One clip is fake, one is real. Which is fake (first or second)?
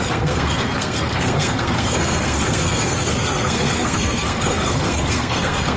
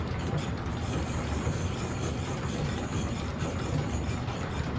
first